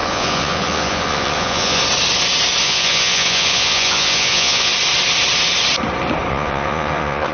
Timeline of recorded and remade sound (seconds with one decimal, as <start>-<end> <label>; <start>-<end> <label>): 0.0-1.8 remade; 1.8-2.6 recorded; 2.6-4.7 remade; 4.7-6.3 recorded; 6.3-7.3 remade